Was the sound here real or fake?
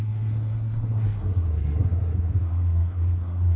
fake